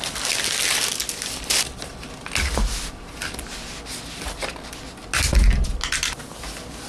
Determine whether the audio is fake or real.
real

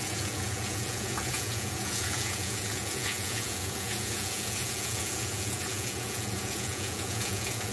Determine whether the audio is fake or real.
fake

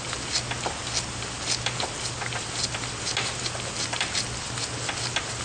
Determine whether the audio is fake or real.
real